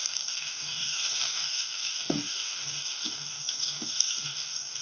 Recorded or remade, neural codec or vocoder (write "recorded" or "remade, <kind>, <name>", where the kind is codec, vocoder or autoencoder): remade, codec, DAC